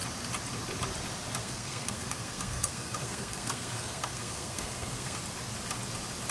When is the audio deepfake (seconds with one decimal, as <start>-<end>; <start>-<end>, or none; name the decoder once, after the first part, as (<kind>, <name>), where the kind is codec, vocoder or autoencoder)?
1.4-5.2 (codec, SNAC)